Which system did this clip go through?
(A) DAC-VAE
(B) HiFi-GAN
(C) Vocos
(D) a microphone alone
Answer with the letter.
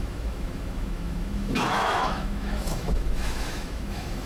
A